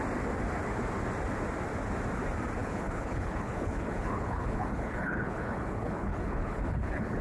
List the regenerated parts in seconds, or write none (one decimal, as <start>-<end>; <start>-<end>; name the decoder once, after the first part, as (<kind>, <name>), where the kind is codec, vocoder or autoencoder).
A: 2.6-7.2 (codec, HILCodec)